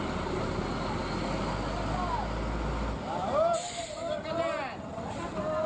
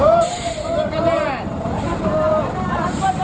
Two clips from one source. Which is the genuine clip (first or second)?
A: first